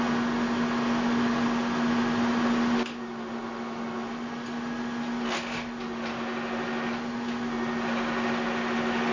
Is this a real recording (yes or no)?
yes